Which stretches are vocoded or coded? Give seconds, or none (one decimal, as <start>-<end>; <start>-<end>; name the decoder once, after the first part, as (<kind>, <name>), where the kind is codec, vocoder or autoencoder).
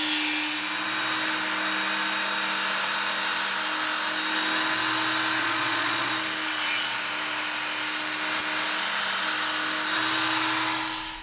5.4-6.1 (vocoder, Vocos)